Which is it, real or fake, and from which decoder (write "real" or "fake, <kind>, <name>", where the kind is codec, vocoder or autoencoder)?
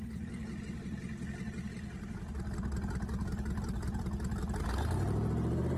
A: real